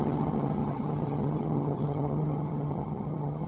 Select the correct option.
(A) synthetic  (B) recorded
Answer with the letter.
A